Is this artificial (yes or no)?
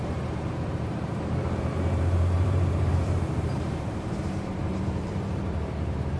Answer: yes